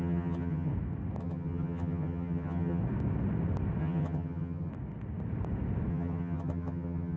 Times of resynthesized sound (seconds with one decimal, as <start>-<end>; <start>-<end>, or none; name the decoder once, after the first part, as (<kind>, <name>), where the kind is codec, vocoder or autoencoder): 0.0-0.7 (vocoder, HiFi-GAN); 1.2-2.8; 3.8-4.7; 5.9-7.2